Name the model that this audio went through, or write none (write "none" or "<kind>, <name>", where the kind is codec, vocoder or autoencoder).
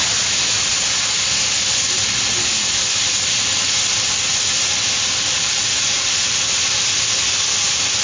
none